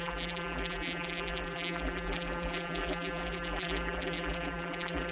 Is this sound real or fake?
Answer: fake